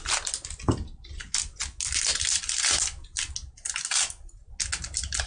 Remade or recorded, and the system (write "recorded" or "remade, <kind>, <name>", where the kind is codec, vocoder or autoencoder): recorded